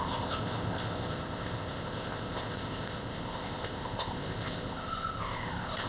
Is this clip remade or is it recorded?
remade